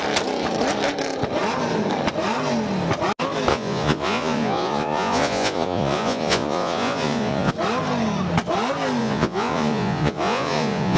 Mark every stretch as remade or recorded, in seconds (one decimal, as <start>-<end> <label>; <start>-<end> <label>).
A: 0.0-3.5 recorded; 3.5-7.5 remade; 7.5-9.0 recorded; 9.0-11.0 remade